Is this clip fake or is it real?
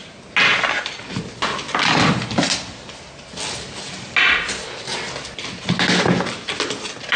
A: real